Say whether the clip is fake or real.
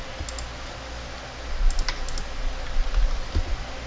real